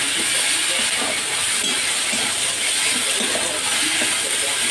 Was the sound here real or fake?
real